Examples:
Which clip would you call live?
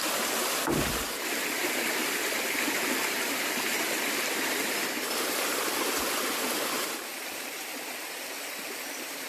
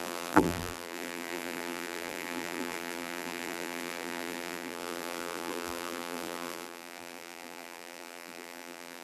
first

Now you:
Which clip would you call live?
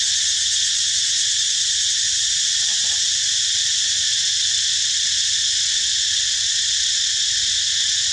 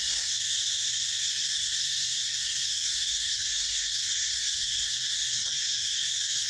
first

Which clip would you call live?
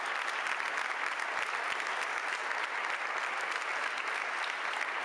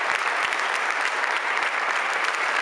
first